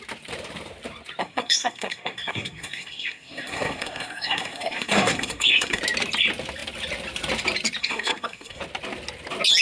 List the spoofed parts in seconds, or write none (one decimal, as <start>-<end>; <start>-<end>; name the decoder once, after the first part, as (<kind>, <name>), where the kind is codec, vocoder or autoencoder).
1.2-5.8 (codec, SNAC); 7.8-8.6